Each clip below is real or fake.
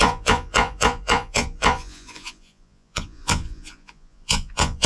fake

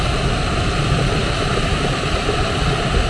real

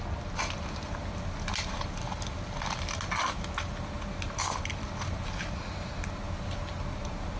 real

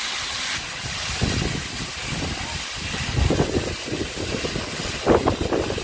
real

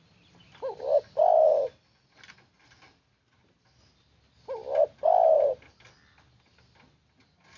real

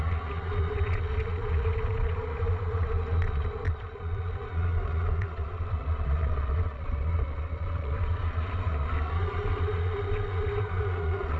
fake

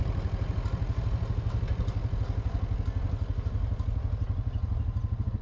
real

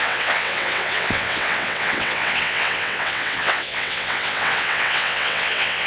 fake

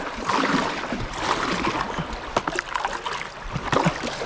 real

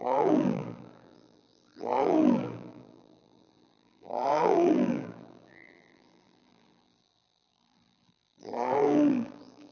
fake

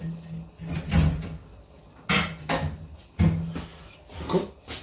real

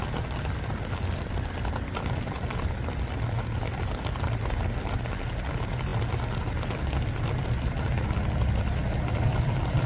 real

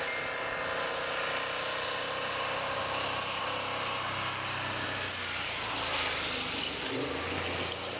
real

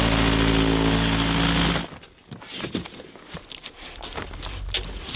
real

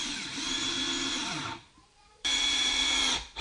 fake